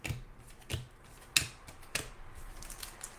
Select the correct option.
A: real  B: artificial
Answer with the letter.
A